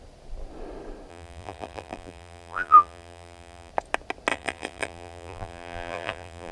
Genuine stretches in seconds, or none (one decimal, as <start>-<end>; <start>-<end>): 0.0-1.1; 3.7-4.3